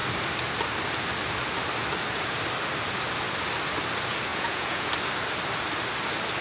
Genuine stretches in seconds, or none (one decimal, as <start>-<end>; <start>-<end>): 0.0-4.3; 4.9-6.4